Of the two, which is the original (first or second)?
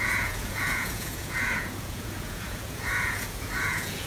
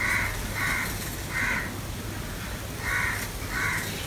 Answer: second